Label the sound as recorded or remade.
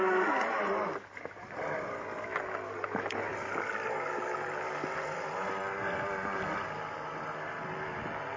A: recorded